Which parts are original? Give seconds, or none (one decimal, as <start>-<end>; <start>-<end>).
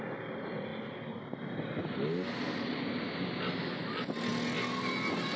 0.0-5.4